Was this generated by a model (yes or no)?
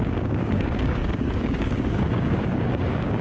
yes